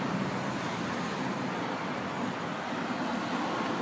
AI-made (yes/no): no